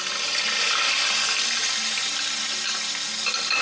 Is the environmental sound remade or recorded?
recorded